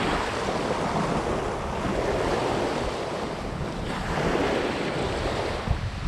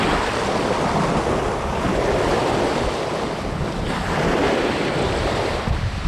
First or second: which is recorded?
first